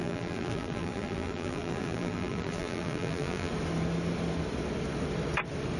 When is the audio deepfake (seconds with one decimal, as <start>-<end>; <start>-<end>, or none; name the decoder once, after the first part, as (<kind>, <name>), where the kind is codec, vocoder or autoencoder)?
0.0-3.5 (vocoder, BigVGAN v2)

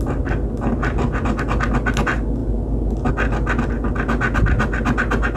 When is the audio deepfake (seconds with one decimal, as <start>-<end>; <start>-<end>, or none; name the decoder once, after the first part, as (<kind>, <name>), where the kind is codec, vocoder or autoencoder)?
none

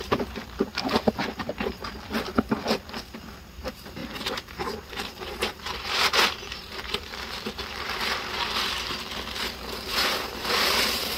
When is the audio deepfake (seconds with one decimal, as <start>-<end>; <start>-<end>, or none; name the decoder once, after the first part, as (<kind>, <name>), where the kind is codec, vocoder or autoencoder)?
0.0-1.8 (vocoder, BigVGAN v2); 3.2-11.2

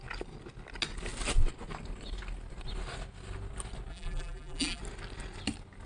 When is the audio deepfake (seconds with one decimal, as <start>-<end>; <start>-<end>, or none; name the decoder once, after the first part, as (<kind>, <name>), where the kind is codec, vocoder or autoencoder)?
3.9-4.8 (vocoder, BigVGAN v2)

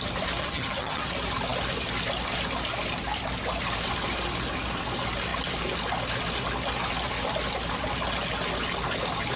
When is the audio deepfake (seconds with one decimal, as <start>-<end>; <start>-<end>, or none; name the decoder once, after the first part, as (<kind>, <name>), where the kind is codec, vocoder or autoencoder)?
0.4-1.1 (vocoder, HiFi-GAN)